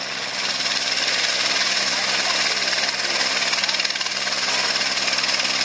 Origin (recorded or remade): recorded